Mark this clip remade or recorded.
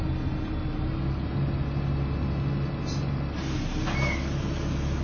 recorded